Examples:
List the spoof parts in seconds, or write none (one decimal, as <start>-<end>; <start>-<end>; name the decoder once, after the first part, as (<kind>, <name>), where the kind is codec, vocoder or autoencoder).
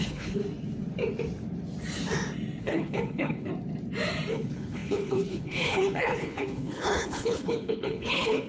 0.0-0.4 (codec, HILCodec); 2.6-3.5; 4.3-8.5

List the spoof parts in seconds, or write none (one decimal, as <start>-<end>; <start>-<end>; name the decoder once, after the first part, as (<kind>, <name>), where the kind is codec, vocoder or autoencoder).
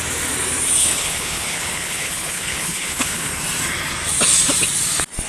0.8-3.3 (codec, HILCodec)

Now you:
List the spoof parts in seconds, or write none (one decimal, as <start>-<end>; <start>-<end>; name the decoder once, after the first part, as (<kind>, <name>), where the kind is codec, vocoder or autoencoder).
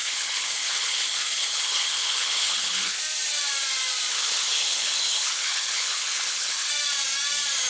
0.0-3.0 (codec, HILCodec); 4.1-6.7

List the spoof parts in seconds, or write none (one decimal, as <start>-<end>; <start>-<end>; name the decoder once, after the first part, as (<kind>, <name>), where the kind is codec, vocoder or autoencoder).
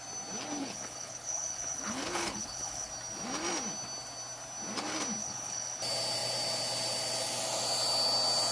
0.6-2.9 (codec, HILCodec); 5.2-5.8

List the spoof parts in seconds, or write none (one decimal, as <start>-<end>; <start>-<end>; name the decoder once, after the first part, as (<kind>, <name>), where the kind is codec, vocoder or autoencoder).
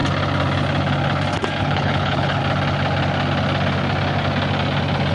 1.6-2.4 (codec, HILCodec)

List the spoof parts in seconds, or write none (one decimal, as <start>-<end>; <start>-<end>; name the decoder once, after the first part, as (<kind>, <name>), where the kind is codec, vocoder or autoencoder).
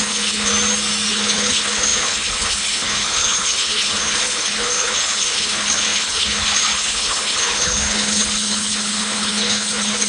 0.0-0.5 (codec, HILCodec); 1.1-10.1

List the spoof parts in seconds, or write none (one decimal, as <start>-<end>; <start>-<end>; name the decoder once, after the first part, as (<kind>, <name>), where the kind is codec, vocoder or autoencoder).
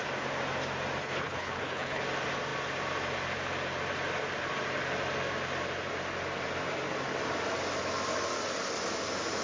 1.0-2.0 (codec, HILCodec)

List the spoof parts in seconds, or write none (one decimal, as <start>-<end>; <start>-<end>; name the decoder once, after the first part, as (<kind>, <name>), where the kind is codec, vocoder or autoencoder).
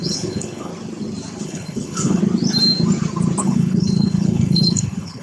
0.0-0.7 (codec, HILCodec); 1.4-2.2; 3.4-5.2